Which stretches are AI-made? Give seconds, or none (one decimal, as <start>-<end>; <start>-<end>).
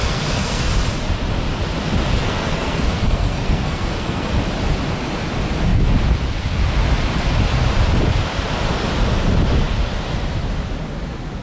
0.0-0.7; 2.2-4.4